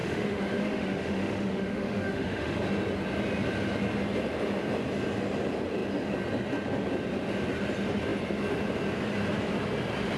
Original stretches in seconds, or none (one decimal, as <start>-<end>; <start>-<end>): 2.6-10.2